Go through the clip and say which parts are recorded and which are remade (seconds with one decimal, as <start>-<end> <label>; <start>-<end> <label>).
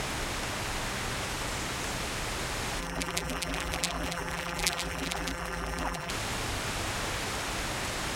0.0-2.8 recorded; 2.8-6.1 remade; 6.1-8.2 recorded